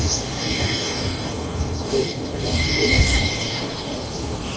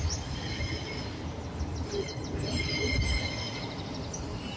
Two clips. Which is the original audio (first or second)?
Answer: second